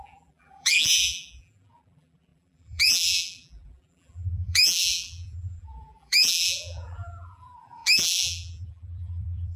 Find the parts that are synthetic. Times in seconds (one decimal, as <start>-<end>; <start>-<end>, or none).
0.0-9.6